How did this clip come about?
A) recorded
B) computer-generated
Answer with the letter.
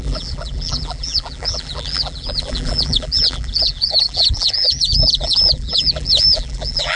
B